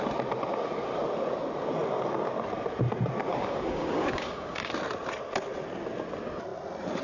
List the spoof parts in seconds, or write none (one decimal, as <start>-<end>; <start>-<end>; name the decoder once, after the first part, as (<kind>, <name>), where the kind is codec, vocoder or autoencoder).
3.3-4.7 (codec, DAC)